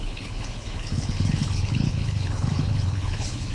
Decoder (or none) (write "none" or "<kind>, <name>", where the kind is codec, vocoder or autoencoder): codec, HILCodec